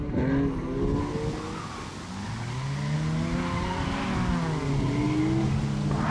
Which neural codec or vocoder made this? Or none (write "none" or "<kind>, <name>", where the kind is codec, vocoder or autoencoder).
none